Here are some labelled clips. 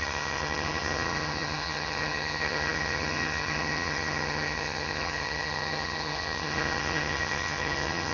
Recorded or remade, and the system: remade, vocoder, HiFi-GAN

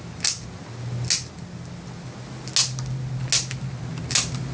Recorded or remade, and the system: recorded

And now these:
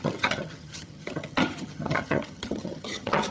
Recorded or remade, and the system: remade, vocoder, HiFi-GAN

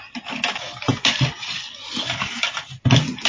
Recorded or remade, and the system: recorded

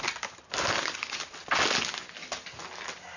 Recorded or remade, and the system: recorded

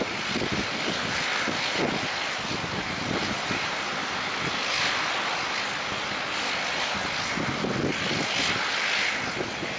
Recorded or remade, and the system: recorded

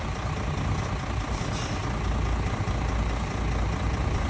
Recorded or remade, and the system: recorded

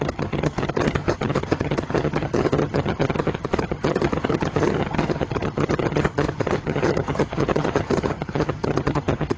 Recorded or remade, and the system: remade, vocoder, HiFi-GAN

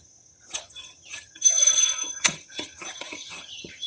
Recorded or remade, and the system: remade, vocoder, HiFi-GAN